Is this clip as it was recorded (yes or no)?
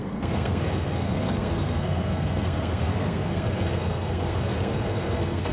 no